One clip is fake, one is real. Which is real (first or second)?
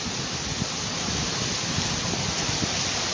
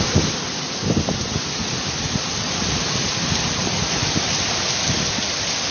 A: first